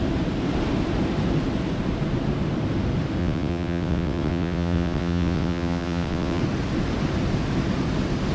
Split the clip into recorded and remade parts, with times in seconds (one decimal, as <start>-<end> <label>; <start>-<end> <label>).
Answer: 0.0-3.2 recorded; 3.2-6.4 remade; 6.4-8.3 recorded